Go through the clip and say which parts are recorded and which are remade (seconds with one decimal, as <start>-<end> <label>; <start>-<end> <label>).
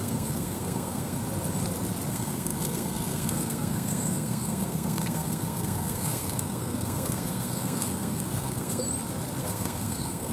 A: 0.0-1.2 remade; 1.2-2.1 recorded; 2.1-8.8 remade; 8.8-9.4 recorded; 9.4-10.3 remade